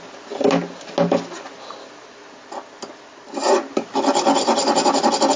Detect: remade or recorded recorded